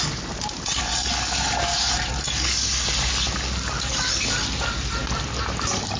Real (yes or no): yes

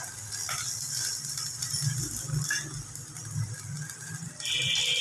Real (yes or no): yes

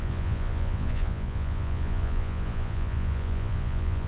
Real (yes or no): no